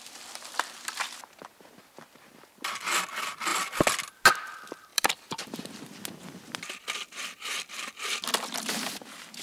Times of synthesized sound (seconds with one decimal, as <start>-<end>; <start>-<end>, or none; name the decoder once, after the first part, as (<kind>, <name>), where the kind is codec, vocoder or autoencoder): 3.5-4.1 (vocoder, BigVGAN v2); 4.9-5.6; 7.5-8.9